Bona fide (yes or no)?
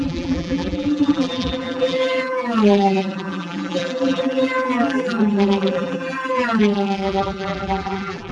no